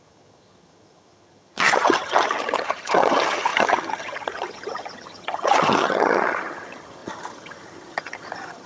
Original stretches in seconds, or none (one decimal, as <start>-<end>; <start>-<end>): none